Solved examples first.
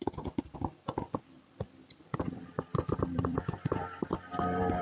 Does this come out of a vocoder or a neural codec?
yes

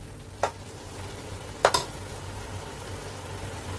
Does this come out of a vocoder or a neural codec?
no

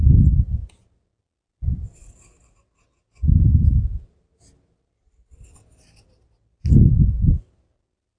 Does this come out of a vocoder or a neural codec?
no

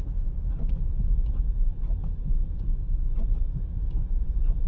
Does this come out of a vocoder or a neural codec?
no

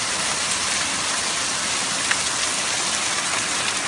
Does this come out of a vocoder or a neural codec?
no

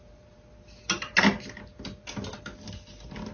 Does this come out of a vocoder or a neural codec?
no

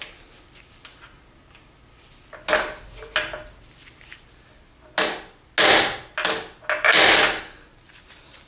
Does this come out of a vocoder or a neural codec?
no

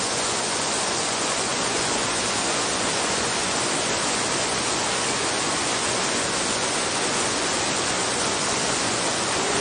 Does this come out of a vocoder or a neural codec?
yes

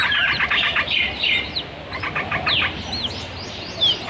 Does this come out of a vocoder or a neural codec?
no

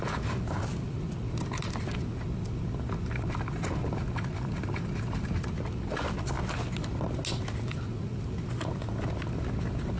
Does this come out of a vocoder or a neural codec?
no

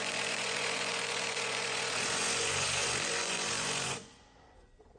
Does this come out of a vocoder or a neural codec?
yes